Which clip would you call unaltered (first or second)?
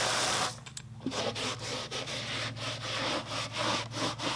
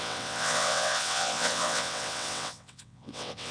first